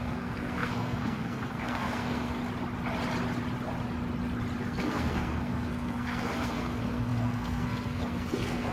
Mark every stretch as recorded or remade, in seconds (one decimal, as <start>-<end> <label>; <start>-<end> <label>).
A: 0.0-2.4 remade; 2.4-4.6 recorded; 4.6-8.7 remade